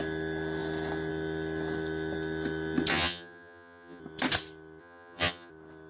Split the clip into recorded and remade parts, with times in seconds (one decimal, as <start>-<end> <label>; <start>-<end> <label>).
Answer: 0.0-2.9 recorded; 2.9-4.0 remade; 4.0-4.8 recorded; 4.8-5.5 remade; 5.5-5.9 recorded